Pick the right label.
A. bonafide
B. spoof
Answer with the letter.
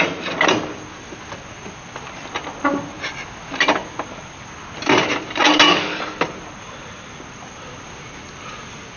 A